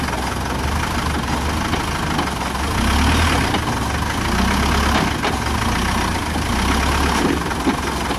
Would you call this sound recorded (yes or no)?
yes